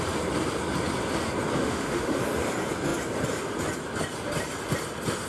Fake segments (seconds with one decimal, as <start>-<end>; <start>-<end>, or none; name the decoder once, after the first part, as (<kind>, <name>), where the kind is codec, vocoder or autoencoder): 1.6-2.2 (autoencoder, DAC-VAE)